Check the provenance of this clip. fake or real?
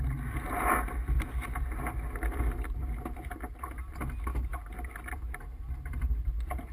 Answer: real